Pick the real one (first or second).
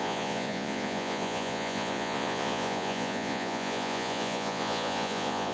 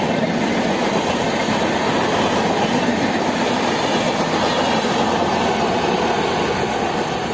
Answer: second